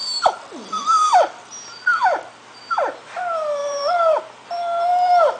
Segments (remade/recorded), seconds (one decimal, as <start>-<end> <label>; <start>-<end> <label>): 0.0-3.6 recorded; 3.6-4.2 remade; 4.2-5.4 recorded